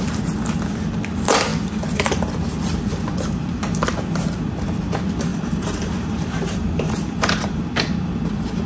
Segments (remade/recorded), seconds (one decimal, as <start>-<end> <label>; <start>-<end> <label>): 0.0-5.3 recorded; 5.3-7.6 remade; 7.6-8.7 recorded